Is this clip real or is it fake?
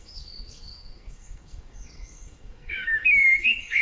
fake